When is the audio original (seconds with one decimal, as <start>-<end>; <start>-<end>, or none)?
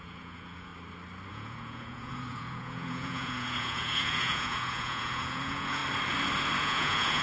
0.7-1.3; 5.8-6.6